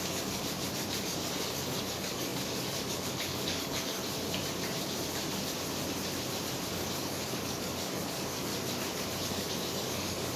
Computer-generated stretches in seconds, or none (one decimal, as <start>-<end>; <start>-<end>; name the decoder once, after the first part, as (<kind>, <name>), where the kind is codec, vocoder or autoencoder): 0.0-0.4 (codec, DAC); 0.9-4.0; 6.7-8.5; 9.2-10.4